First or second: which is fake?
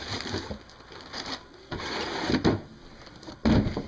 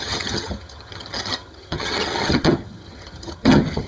second